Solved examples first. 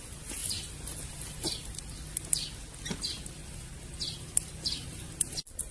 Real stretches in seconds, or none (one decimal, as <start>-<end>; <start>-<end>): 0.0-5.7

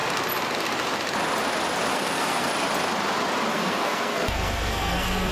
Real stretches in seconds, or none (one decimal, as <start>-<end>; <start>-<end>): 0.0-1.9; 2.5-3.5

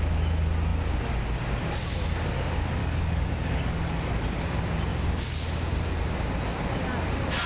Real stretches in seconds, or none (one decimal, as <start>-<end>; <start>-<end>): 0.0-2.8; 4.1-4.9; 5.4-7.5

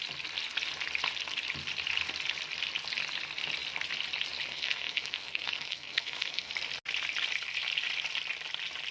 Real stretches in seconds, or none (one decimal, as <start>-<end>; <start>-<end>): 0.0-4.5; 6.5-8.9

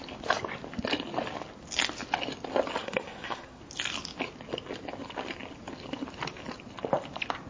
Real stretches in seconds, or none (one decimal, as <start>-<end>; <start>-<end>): 0.0-2.8; 3.6-7.5